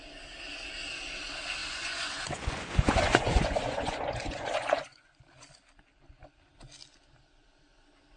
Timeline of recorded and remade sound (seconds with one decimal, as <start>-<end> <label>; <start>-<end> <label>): 0.0-1.6 recorded; 1.6-5.2 remade; 5.2-8.2 recorded